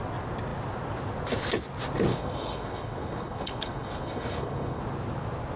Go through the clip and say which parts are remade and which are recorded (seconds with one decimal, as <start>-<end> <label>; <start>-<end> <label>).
0.0-2.1 recorded; 2.1-4.8 remade; 4.8-5.6 recorded